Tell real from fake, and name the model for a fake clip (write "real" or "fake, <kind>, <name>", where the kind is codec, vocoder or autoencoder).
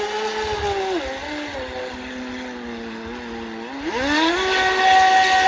real